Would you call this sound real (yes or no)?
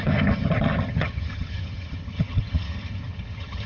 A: no